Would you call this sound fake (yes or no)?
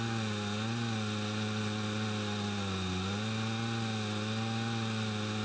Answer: no